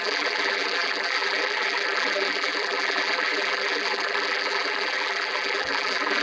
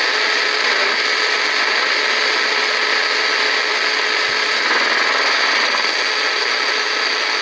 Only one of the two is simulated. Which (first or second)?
first